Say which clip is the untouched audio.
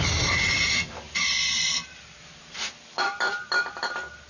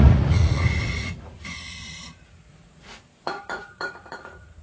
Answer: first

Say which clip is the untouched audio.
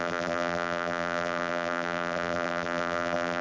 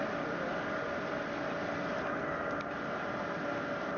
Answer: second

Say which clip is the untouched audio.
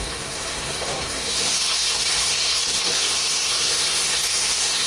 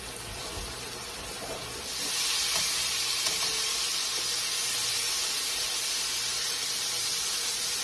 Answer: second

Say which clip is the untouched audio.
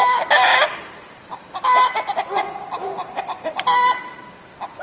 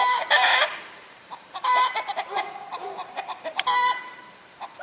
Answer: first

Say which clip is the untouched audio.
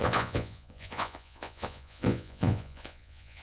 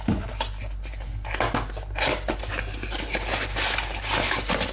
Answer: second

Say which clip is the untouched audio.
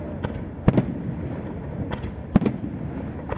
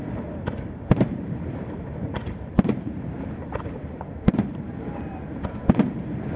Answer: first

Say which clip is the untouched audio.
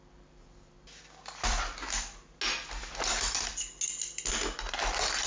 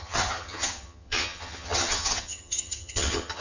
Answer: first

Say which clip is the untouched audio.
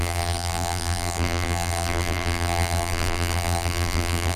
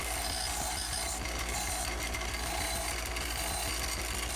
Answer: second